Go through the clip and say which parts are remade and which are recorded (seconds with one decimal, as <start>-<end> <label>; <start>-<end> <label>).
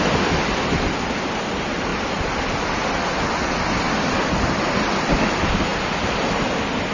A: 0.0-6.9 recorded